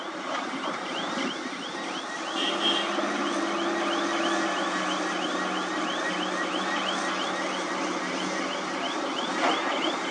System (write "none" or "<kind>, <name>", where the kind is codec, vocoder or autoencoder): none